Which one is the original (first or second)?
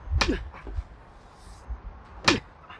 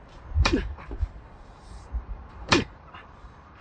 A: first